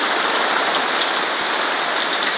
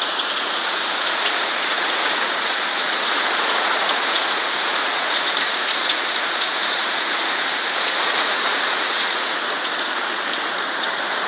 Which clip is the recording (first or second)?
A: first